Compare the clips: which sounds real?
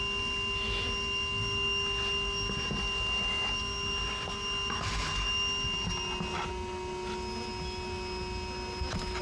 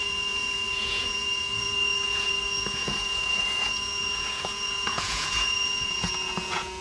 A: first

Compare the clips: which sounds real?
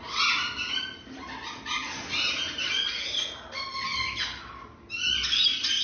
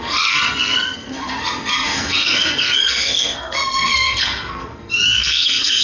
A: first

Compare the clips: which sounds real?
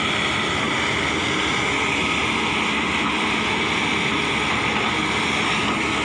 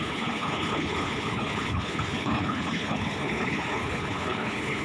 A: first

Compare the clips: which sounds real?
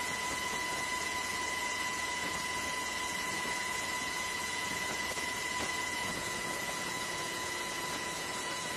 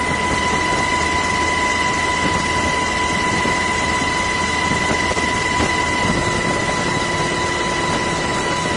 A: second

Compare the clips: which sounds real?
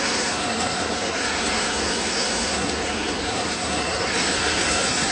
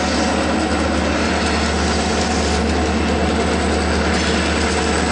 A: second